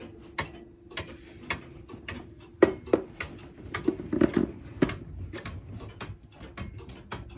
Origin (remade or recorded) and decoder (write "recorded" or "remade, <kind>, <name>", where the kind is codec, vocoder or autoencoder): recorded